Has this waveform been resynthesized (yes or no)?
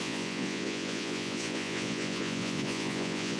yes